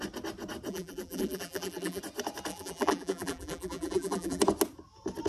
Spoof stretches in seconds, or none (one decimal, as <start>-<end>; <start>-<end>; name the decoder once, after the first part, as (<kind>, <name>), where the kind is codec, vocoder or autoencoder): 0.7-2.0 (vocoder, BigVGAN v2); 2.5-4.4